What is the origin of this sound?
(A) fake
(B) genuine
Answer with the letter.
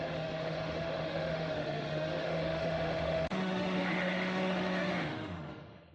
A